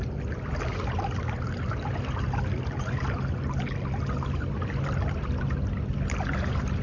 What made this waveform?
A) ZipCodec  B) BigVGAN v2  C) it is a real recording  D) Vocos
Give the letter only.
C